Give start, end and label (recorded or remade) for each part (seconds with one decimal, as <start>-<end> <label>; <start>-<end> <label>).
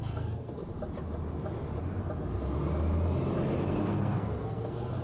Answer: 0.0-0.7 remade; 0.7-3.7 recorded; 3.7-5.0 remade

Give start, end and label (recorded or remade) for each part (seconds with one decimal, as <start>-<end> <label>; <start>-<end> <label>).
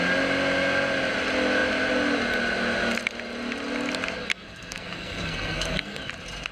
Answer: 0.0-4.3 recorded; 4.3-6.0 remade; 6.0-6.5 recorded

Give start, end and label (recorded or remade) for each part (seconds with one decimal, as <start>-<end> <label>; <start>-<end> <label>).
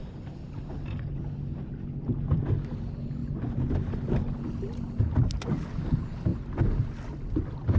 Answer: 0.0-7.8 recorded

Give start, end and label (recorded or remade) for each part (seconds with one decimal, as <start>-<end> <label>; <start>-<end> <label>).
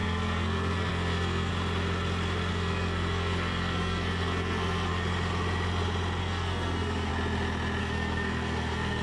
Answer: 0.0-1.5 remade; 1.5-2.5 recorded; 2.5-4.9 remade; 4.9-6.2 recorded; 6.2-7.1 remade; 7.1-7.8 recorded; 7.8-9.0 remade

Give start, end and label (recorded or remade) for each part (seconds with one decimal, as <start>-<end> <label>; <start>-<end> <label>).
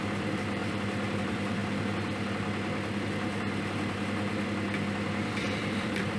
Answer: 0.0-0.6 remade; 0.6-1.2 recorded; 1.2-1.6 remade; 1.6-5.3 recorded; 5.3-6.2 remade